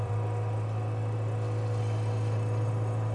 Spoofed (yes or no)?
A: no